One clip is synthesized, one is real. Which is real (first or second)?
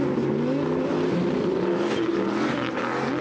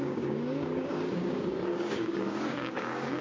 first